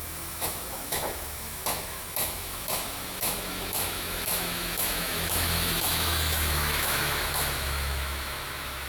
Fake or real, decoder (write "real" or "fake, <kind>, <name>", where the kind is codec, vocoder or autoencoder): fake, autoencoder, DAC-VAE